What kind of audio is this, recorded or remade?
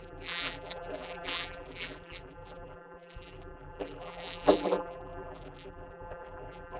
remade